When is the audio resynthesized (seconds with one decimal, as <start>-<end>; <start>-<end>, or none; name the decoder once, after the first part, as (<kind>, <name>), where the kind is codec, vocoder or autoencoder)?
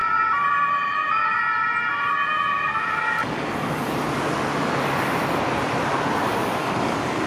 3.2-3.9 (codec, DAC); 6.6-7.3